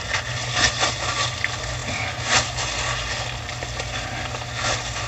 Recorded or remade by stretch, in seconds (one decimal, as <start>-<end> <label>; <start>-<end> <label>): 0.0-5.1 recorded